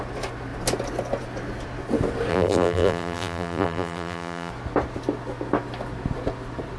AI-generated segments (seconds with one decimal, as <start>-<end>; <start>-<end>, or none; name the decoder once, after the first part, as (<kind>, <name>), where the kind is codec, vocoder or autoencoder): 2.3-4.5 (vocoder, BigVGAN v2)